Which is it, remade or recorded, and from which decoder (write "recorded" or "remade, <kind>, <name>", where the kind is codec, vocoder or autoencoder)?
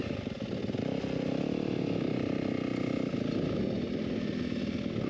recorded